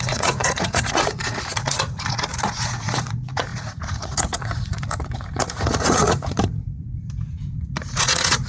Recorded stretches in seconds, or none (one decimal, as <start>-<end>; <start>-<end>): none